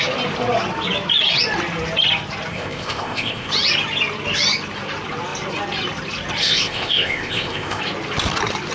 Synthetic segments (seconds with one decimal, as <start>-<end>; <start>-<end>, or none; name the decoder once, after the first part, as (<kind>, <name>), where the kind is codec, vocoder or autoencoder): 2.5-3.5 (codec, ZipCodec); 6.4-7.8